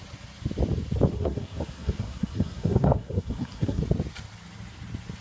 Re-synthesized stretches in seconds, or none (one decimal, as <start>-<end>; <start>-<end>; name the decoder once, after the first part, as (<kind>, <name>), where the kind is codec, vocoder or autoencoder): 1.1-3.8 (codec, SNAC)